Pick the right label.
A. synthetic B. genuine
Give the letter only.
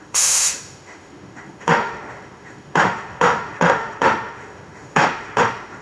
A